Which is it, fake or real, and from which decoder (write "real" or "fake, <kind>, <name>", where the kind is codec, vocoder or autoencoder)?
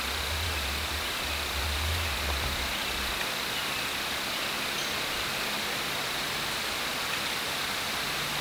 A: real